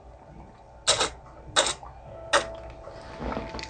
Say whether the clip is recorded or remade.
recorded